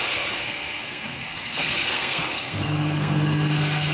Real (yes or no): no